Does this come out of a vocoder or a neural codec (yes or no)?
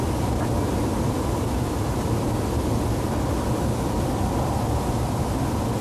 no